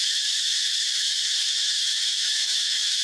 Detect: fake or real fake